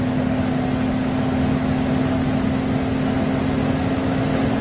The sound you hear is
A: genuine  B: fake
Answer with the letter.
A